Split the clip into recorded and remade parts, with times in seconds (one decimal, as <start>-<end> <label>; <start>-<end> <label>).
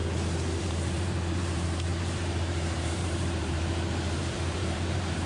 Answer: 0.0-0.6 recorded; 0.6-5.3 remade